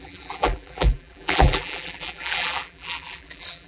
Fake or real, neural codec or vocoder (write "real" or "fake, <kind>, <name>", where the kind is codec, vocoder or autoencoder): fake, vocoder, BigVGAN v2